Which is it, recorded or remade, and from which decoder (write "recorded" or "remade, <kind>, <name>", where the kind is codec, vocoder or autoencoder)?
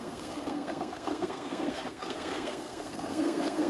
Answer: remade, codec, SNAC